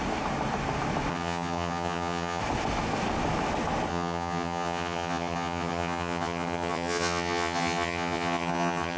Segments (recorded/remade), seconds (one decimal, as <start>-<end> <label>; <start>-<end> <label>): 0.0-1.1 recorded; 1.1-2.4 remade; 2.4-3.9 recorded; 3.9-9.0 remade